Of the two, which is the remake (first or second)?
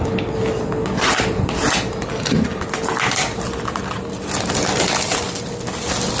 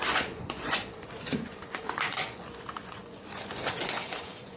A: second